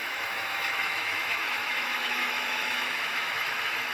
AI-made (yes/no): yes